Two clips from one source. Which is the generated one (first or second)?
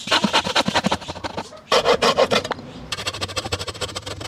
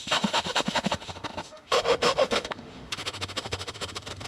second